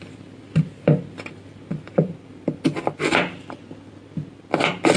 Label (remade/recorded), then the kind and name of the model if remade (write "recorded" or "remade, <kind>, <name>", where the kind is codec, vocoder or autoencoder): recorded